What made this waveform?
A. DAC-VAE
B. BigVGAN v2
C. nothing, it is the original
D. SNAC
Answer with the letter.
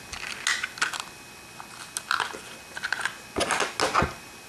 C